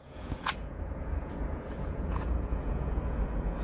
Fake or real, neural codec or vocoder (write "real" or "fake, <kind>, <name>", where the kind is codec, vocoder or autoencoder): fake, vocoder, Vocos